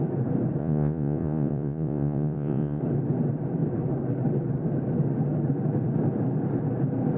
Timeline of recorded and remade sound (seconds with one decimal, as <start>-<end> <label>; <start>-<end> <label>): 0.0-0.6 recorded; 0.6-2.8 remade; 2.8-7.2 recorded